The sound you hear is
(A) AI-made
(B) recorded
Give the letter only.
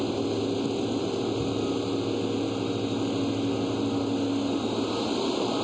B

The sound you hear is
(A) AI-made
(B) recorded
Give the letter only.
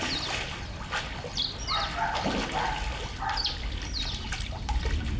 B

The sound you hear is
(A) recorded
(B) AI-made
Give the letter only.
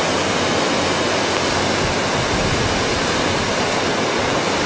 A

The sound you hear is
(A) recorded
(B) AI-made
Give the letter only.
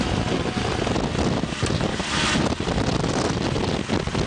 A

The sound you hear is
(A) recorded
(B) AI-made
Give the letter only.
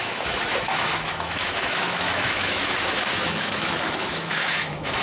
B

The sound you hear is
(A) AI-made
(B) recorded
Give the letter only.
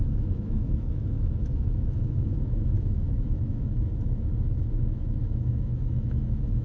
A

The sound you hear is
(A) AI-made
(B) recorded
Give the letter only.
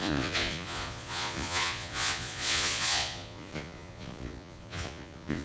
A